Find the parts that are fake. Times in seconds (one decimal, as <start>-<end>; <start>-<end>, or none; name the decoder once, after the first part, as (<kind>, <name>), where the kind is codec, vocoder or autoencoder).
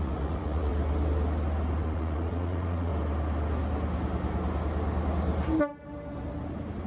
0.0-0.7 (vocoder, Vocos); 1.8-2.9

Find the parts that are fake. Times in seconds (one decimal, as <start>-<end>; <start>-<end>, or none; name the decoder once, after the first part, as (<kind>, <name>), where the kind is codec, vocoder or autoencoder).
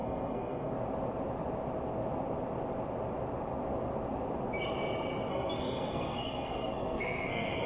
0.0-0.7 (codec, SNAC); 5.3-7.7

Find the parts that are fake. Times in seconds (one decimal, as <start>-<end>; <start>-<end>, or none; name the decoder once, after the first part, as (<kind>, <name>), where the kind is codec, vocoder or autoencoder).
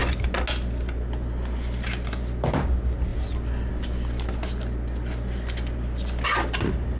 none